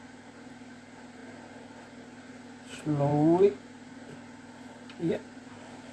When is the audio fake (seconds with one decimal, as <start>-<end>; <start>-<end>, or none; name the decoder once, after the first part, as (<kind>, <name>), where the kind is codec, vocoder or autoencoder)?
none